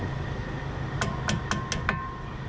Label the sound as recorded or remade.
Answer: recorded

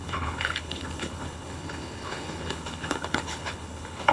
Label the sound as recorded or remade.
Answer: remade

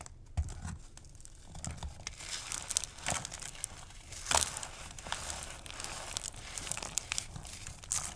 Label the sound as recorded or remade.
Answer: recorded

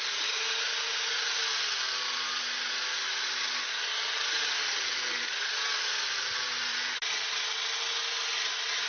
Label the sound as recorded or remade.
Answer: recorded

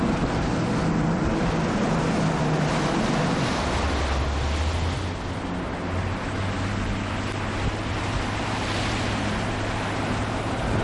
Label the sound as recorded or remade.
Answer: recorded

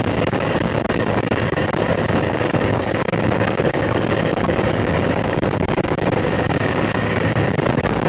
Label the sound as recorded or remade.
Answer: remade